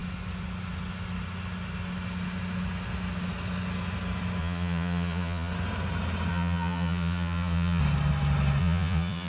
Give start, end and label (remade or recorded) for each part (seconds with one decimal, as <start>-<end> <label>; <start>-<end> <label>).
0.0-4.4 recorded; 4.4-5.5 remade; 5.5-6.3 recorded; 6.3-7.8 remade; 7.8-8.6 recorded; 8.6-9.3 remade